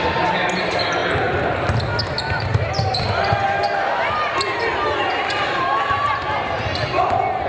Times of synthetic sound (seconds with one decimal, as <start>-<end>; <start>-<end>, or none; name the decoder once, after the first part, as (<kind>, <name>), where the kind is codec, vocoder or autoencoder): none